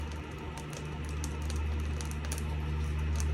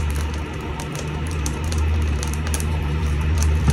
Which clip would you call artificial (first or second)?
second